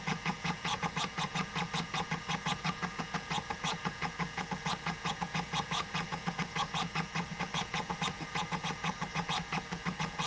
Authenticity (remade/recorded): remade